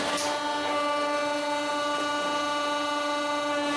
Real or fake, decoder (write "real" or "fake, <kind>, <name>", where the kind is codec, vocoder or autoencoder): real